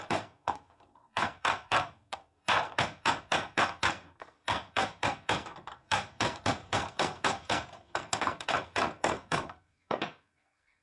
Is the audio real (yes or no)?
no